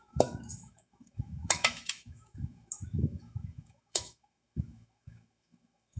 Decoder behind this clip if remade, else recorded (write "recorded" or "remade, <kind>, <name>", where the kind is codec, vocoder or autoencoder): remade, autoencoder, DAC-VAE